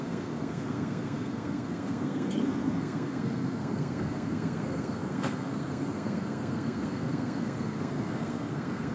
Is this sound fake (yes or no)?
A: yes